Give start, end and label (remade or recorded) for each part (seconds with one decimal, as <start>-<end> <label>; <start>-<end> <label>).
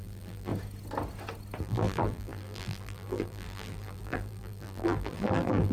0.0-0.5 remade; 0.5-1.6 recorded; 1.6-5.7 remade